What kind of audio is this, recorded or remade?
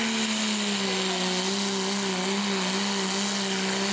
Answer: recorded